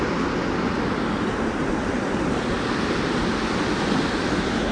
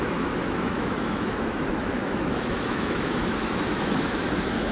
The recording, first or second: first